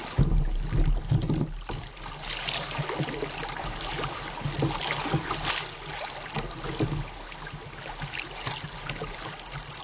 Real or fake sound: real